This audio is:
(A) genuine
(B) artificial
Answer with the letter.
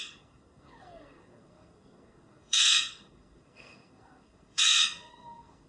B